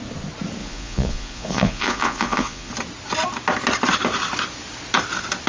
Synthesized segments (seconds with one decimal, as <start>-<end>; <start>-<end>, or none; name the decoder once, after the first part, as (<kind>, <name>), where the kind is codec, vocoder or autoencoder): 0.6-2.7 (vocoder, Vocos)